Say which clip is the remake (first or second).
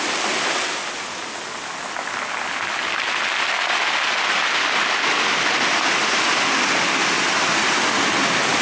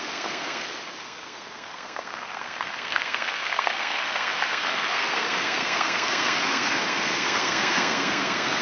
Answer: second